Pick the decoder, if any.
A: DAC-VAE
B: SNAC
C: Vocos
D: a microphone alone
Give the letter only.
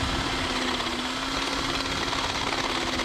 D